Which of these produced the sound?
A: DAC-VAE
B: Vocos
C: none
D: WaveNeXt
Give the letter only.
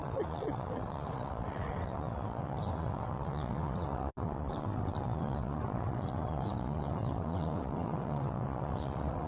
D